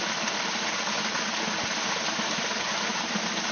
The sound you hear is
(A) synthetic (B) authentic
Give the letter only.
B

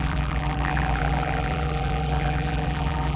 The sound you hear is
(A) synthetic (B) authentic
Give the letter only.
A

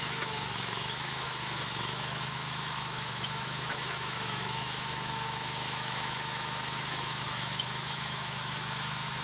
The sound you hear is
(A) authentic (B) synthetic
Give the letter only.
B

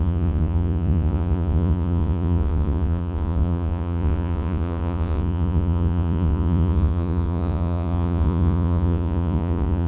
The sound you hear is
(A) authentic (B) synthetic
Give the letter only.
B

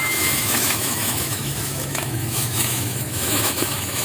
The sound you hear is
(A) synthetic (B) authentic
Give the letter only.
A